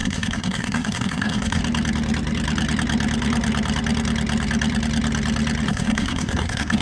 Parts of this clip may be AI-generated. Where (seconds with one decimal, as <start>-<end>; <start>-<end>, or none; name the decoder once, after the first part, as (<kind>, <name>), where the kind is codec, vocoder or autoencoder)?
0.0-1.6 (codec, SNAC); 5.7-6.8